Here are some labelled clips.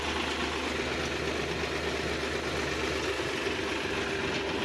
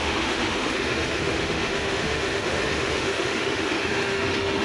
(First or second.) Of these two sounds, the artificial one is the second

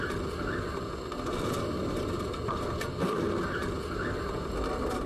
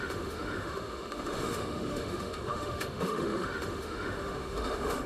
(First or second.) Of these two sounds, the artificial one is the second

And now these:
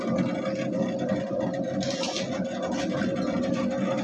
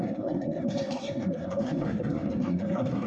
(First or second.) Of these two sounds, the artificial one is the second